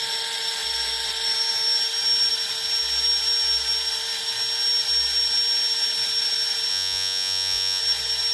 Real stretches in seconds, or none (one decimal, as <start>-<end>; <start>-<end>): 0.0-6.7; 7.8-8.3